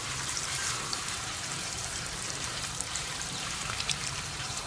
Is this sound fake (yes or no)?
yes